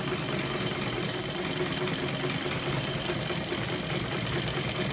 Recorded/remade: recorded